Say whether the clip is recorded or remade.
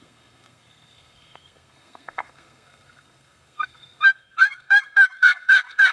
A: remade